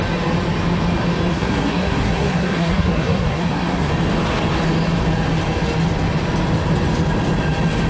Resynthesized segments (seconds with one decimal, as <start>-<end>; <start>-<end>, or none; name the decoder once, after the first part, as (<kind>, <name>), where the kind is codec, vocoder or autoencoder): 1.3-3.9 (codec, SNAC)